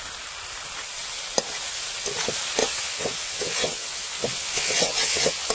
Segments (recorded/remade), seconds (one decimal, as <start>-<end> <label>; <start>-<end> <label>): 0.0-2.6 recorded; 2.6-5.5 remade